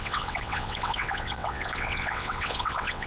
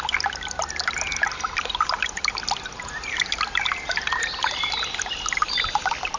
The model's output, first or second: first